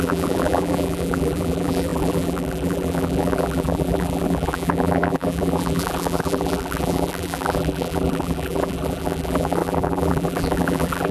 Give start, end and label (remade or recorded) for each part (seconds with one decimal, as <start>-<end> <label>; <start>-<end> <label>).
0.0-11.1 remade